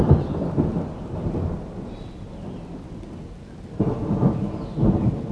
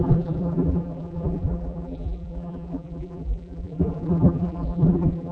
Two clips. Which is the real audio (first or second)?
first